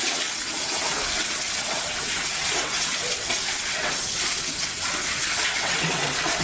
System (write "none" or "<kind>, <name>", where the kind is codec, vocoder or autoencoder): vocoder, WaveNeXt